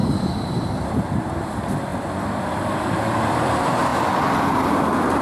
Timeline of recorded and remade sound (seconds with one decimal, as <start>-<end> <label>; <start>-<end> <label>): 0.0-1.3 recorded; 1.3-5.2 remade